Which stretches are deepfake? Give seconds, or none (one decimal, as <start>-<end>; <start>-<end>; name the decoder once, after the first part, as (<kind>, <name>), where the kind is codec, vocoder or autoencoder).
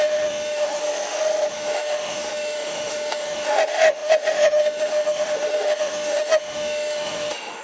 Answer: 0.0-0.8 (autoencoder, DAC-VAE); 1.5-7.6